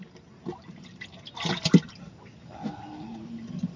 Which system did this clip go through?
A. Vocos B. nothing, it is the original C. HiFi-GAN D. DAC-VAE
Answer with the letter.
B